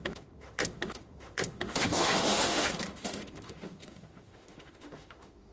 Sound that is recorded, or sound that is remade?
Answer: remade